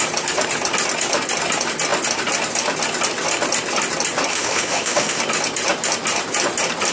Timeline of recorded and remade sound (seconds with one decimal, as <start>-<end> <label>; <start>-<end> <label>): 0.0-4.3 recorded; 4.3-5.2 remade; 5.2-6.9 recorded